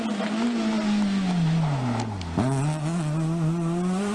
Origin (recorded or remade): recorded